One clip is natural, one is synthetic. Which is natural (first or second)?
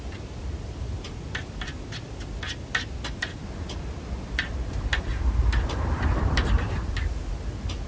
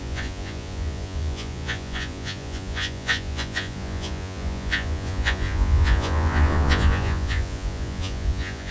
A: first